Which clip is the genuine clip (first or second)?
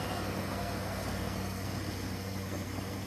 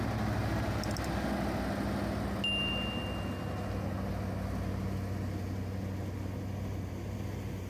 second